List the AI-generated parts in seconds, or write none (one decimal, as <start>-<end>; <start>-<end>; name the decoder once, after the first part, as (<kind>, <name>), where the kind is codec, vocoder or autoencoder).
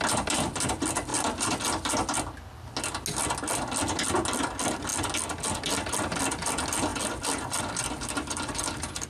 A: 1.1-1.6 (vocoder, BigVGAN v2); 6.9-7.6